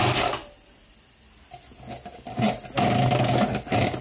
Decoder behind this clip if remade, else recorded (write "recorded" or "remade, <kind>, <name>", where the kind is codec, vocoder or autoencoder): recorded